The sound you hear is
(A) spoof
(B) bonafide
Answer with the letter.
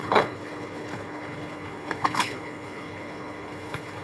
A